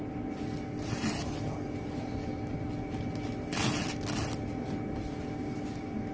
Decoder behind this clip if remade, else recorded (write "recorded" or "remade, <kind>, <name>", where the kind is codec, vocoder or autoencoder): recorded